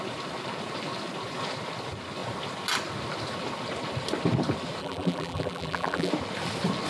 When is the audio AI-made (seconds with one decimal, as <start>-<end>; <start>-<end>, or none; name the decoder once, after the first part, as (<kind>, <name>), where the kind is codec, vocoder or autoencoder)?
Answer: 4.8-6.1 (vocoder, BigVGAN v2)